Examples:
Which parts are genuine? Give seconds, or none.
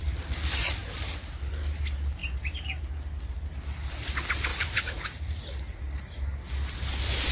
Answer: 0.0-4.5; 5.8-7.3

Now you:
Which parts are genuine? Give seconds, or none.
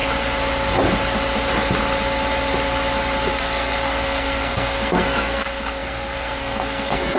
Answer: 0.0-3.3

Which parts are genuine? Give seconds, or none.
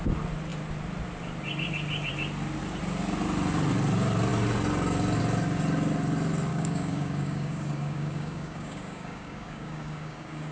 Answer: 0.0-6.5